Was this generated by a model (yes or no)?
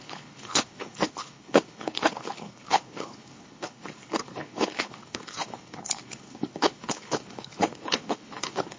yes